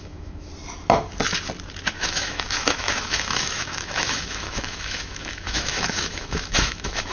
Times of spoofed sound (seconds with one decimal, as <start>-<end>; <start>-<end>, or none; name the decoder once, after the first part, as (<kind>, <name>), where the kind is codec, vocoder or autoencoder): 0.0-0.5 (autoencoder, DAC-VAE); 1.9-7.1